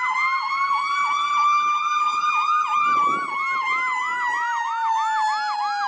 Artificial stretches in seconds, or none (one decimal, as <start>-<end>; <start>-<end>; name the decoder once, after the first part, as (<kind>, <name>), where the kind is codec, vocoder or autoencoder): none